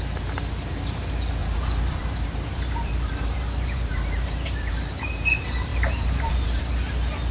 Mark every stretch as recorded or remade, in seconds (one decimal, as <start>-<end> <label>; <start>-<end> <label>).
0.0-1.4 recorded; 1.4-5.1 remade; 5.1-5.7 recorded; 5.7-6.6 remade; 6.6-7.3 recorded